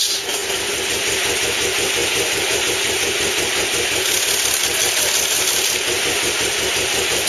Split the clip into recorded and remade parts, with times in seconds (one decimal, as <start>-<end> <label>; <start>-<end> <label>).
0.0-7.3 recorded

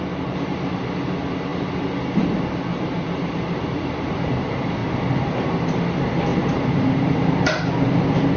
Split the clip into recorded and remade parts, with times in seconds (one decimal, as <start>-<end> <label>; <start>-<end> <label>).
0.0-2.7 recorded; 2.7-4.3 remade; 4.3-6.3 recorded; 6.3-7.4 remade; 7.4-8.4 recorded

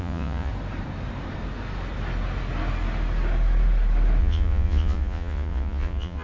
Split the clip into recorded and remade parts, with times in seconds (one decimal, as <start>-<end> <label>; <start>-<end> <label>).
0.0-0.5 remade; 0.5-4.2 recorded; 4.2-6.2 remade

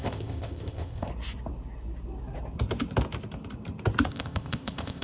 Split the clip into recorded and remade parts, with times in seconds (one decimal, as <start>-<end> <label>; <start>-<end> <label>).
0.0-1.1 remade; 1.1-4.1 recorded; 4.1-5.0 remade

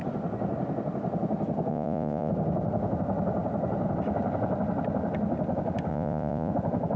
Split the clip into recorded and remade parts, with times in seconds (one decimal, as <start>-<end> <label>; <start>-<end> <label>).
0.0-1.7 recorded; 1.7-2.3 remade; 2.3-5.9 recorded; 5.9-6.5 remade; 6.5-7.0 recorded

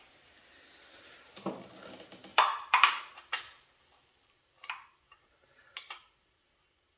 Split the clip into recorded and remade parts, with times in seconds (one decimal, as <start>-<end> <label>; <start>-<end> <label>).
0.0-2.3 recorded; 2.3-3.0 remade; 3.0-7.0 recorded

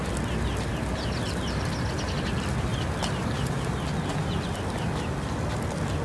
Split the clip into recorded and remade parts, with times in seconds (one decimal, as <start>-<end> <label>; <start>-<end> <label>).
0.0-2.7 recorded; 2.7-3.7 remade; 3.7-6.0 recorded

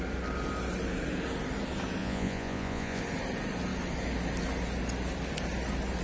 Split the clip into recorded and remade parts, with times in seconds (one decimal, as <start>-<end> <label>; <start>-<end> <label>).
0.0-2.0 recorded; 2.0-3.0 remade; 3.0-6.0 recorded